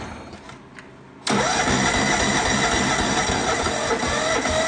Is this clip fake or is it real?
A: real